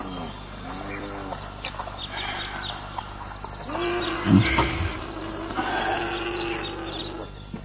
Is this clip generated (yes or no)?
no